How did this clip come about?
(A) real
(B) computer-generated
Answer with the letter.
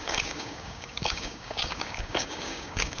B